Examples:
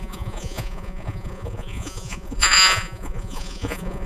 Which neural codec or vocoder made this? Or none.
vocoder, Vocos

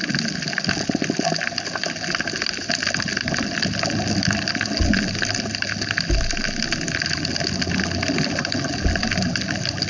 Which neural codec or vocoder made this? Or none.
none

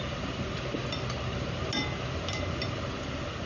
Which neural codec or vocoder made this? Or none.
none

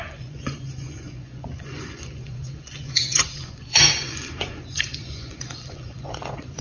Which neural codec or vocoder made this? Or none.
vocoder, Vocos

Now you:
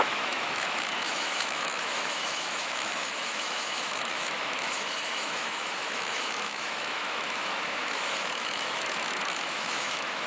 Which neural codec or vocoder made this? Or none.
autoencoder, DAC-VAE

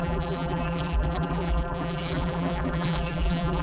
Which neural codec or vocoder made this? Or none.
vocoder, BigVGAN v2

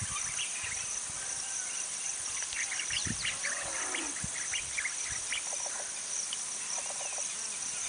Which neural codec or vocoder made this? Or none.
none